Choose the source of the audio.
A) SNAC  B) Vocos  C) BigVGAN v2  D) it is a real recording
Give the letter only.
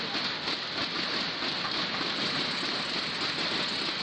D